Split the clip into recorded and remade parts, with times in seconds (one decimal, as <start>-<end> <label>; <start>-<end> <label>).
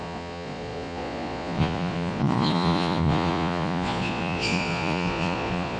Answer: 0.0-5.8 remade